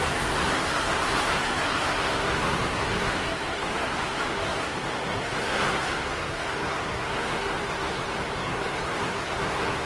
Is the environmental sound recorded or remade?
remade